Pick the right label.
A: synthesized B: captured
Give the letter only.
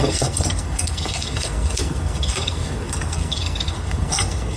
A